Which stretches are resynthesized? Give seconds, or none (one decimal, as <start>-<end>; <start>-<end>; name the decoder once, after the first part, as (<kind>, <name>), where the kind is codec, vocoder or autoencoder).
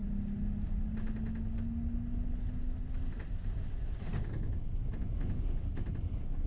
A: none